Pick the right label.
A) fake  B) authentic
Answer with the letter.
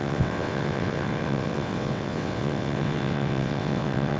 A